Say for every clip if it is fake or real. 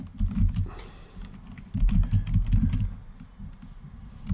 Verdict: real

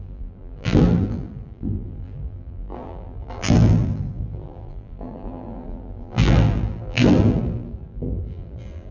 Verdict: fake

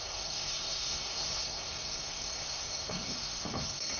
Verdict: fake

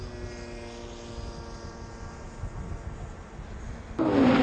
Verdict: real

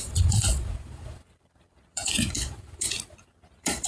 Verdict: fake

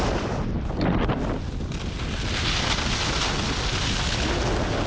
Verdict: real